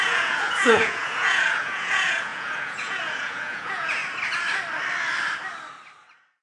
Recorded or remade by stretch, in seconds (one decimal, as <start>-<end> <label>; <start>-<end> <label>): 0.0-4.0 remade; 4.0-6.4 recorded